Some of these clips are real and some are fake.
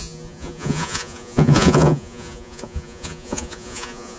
fake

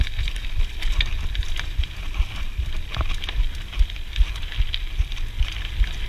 real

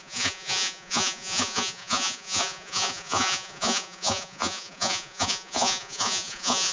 fake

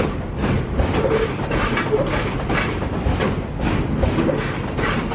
real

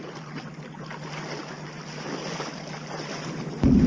real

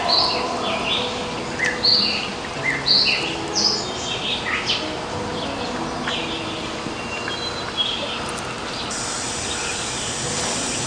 fake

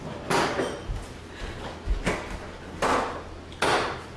real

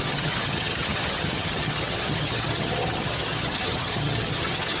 fake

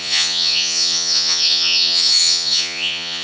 fake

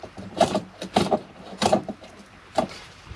fake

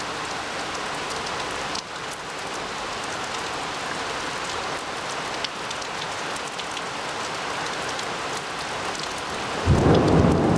real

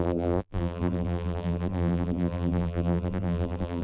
fake